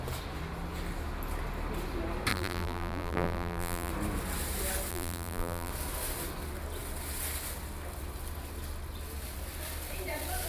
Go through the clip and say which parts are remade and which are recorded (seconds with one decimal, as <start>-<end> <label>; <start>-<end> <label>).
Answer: 0.0-2.3 recorded; 2.3-3.9 remade; 3.9-4.9 recorded; 4.9-5.7 remade; 5.7-10.5 recorded